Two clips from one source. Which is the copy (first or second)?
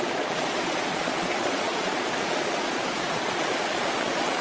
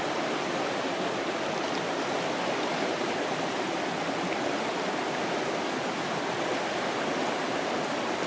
first